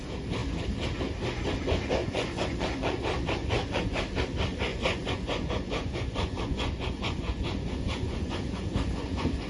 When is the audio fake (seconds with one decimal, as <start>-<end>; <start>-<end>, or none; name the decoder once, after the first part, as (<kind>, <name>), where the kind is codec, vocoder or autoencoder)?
2.0-3.0 (vocoder, Vocos); 3.4-4.0; 4.7-9.5